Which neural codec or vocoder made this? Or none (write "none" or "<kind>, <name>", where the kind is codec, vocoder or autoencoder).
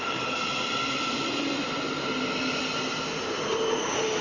none